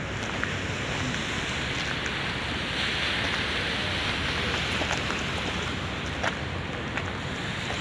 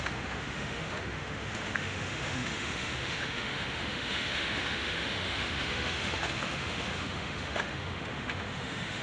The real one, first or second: first